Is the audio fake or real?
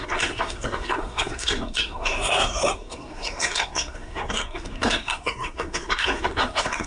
fake